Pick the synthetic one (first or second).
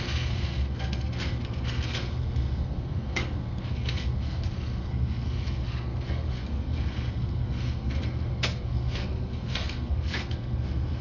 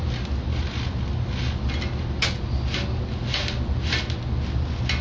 first